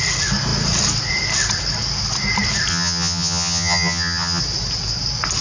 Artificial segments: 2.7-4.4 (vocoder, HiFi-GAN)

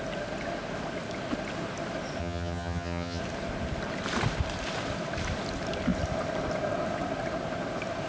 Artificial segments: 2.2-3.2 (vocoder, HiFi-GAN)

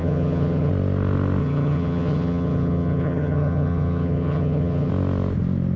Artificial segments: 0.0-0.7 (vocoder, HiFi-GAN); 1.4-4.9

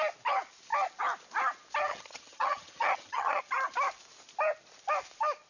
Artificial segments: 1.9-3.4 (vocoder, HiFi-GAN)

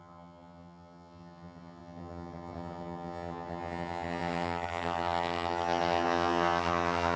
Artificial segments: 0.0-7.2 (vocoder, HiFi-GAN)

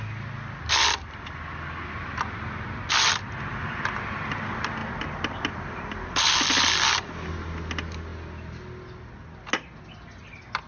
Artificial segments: none